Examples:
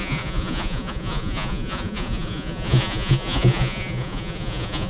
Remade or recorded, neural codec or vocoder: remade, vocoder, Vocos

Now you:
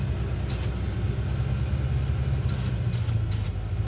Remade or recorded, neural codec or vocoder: recorded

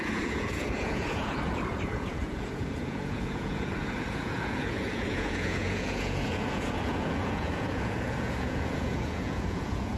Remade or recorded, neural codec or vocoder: remade, vocoder, Vocos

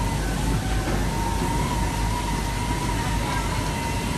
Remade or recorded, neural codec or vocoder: recorded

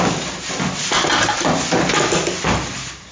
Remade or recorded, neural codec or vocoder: recorded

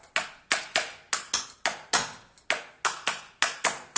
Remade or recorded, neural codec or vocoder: recorded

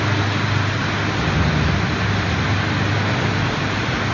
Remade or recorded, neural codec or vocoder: recorded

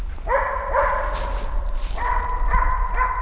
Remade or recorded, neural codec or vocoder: recorded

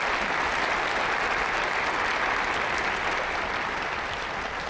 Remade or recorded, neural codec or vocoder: recorded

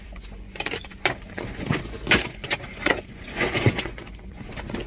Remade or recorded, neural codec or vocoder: remade, vocoder, Vocos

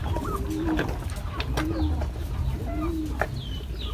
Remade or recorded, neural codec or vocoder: recorded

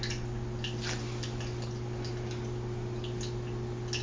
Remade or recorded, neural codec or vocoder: recorded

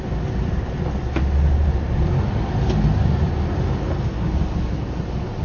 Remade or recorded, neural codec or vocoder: recorded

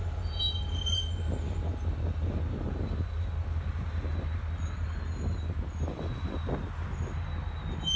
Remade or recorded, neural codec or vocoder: recorded